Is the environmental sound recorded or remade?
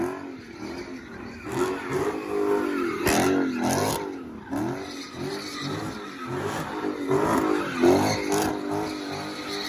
recorded